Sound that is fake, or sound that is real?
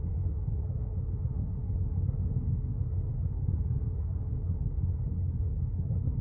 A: fake